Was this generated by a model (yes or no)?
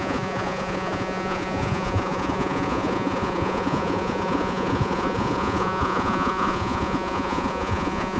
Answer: yes